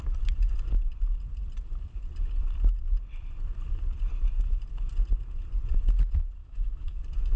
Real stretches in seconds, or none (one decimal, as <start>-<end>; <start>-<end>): 0.0-6.4; 7.0-7.4